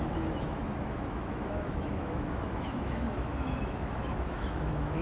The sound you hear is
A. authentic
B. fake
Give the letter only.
B